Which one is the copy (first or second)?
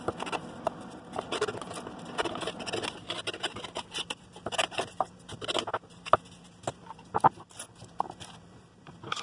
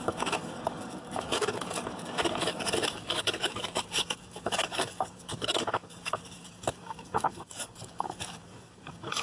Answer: second